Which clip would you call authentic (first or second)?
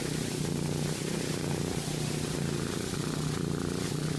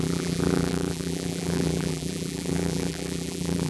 first